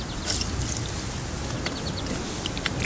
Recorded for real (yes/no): yes